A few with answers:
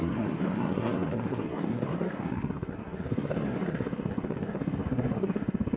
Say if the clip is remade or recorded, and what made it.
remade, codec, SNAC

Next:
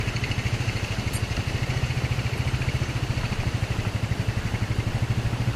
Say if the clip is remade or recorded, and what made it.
remade, vocoder, BigVGAN v2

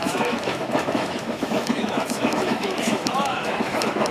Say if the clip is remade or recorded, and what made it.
remade, autoencoder, DAC-VAE